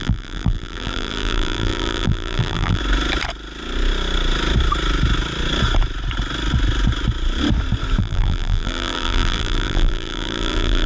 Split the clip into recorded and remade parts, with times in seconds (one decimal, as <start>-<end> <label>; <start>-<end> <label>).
0.0-2.8 remade; 2.8-8.0 recorded; 8.0-10.9 remade